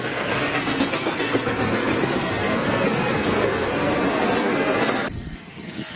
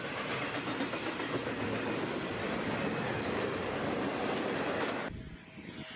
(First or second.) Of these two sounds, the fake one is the first